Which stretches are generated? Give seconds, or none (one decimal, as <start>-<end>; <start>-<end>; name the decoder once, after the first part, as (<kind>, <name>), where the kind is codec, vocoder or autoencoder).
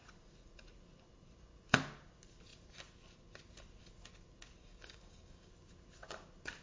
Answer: 4.6-5.5 (codec, DAC)